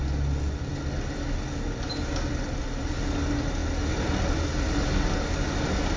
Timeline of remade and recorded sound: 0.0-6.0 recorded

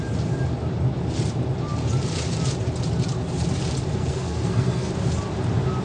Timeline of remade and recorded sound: 0.0-4.0 recorded; 4.0-4.9 remade; 4.9-5.8 recorded

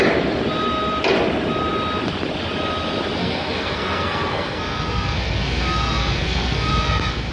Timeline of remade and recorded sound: 0.0-3.2 recorded; 3.2-7.3 remade

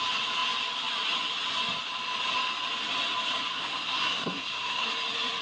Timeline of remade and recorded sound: 0.0-3.5 recorded; 3.5-4.9 remade; 4.9-5.4 recorded

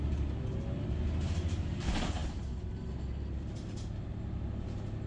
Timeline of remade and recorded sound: 0.0-5.1 recorded

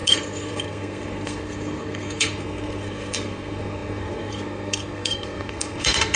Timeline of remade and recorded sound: 0.0-6.2 remade